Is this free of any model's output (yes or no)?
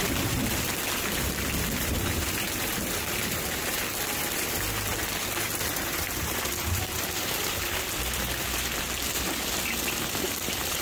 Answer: no